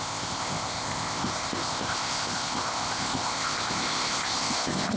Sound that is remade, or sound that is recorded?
remade